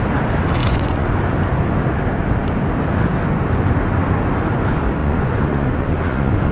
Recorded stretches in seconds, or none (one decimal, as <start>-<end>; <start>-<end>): 0.0-0.6; 1.2-5.0